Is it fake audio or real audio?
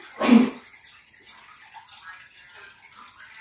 real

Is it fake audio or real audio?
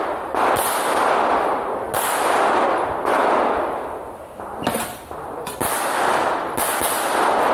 real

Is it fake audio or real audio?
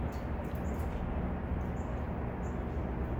real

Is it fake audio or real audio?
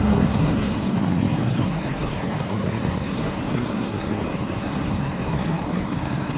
fake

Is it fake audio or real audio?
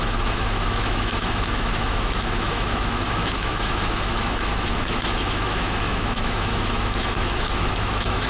fake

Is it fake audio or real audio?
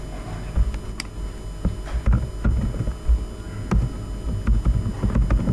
real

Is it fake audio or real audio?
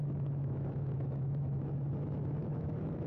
fake